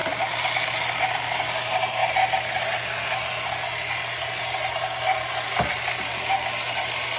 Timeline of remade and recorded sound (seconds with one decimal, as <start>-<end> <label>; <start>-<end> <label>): 0.0-7.2 recorded